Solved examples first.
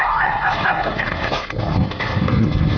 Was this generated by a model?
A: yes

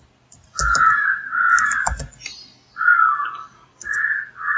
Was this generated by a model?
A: no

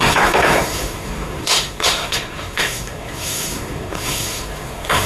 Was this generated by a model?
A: yes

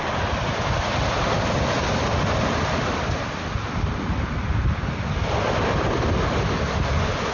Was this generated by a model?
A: no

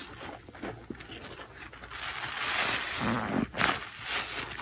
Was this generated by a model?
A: no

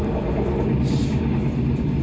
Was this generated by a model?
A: no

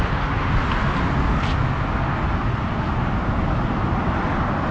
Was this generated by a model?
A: no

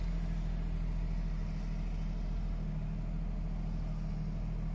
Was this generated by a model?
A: no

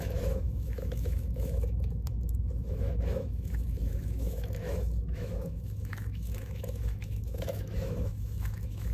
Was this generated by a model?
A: yes